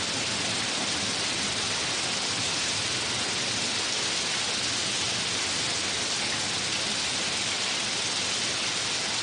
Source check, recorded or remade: recorded